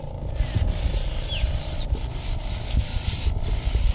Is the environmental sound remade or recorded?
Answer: remade